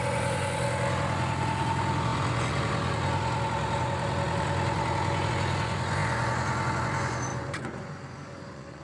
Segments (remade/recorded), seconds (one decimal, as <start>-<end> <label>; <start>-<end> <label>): 0.0-8.8 remade